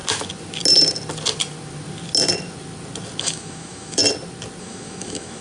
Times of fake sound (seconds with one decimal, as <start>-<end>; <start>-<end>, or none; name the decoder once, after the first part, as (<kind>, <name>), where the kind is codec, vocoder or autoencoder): 3.2-4.0 (autoencoder, DAC-VAE); 4.6-5.4